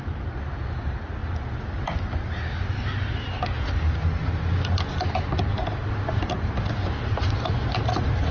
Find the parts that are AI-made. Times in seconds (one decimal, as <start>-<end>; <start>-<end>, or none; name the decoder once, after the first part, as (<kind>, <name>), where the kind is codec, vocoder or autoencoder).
none